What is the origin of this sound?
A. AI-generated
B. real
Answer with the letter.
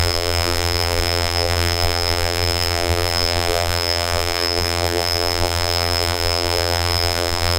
A